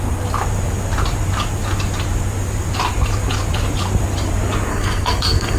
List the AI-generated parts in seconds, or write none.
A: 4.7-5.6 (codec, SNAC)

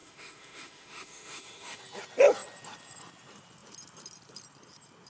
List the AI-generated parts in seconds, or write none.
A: 0.0-1.8 (autoencoder, DAC-VAE)

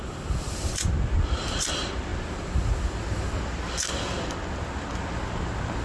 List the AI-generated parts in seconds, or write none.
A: none

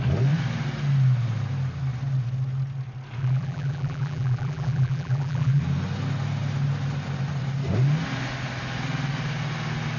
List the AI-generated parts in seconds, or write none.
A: 3.2-5.6 (vocoder, BigVGAN v2)

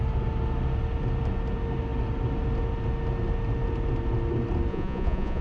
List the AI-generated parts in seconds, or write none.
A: 4.7-5.4 (vocoder, Vocos)

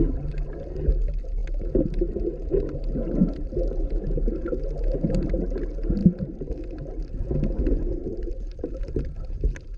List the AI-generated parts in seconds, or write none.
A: 8.0-9.8 (vocoder, BigVGAN v2)

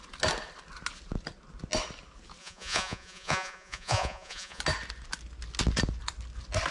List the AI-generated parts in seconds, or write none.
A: 2.4-4.6 (vocoder, Vocos)

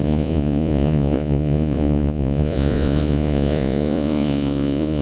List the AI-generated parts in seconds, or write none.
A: 0.0-5.0 (vocoder, Vocos)